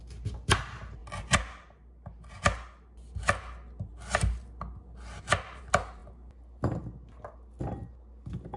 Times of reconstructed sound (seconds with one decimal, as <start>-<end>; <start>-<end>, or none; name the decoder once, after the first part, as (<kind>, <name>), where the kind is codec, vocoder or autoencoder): none